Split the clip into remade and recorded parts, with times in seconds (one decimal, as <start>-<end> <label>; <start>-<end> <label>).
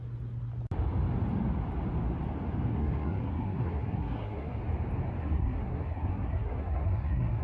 0.0-2.7 recorded; 2.7-4.6 remade; 4.6-5.2 recorded; 5.2-7.4 remade